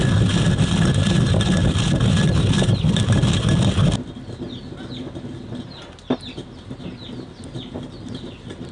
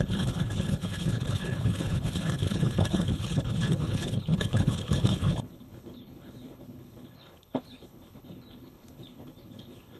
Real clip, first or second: first